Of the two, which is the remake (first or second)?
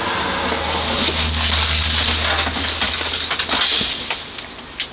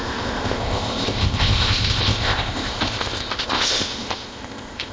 second